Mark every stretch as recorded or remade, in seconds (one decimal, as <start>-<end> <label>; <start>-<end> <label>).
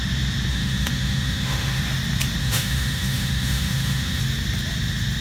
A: 0.0-0.5 recorded; 0.5-1.8 remade; 1.8-2.4 recorded; 2.4-4.2 remade; 4.2-5.2 recorded